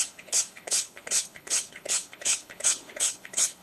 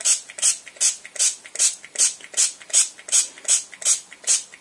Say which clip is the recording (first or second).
second